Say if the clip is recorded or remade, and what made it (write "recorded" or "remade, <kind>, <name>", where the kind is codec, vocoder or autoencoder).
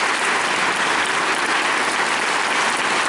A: recorded